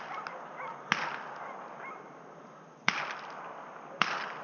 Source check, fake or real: real